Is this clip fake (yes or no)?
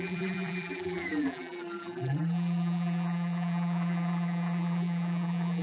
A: yes